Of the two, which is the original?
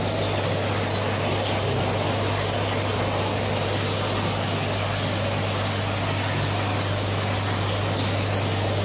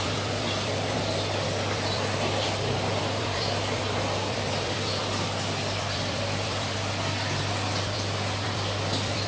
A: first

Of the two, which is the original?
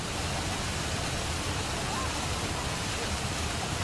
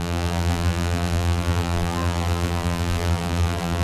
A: first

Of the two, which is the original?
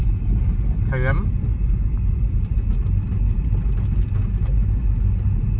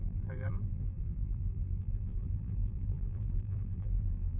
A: first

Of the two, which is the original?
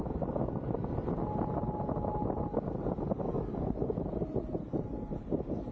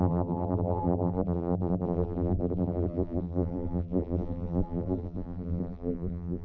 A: first